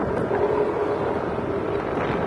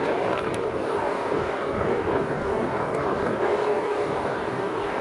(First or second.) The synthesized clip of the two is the second